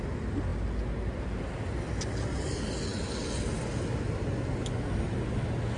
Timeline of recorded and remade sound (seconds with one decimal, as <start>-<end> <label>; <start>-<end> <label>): 0.0-5.8 recorded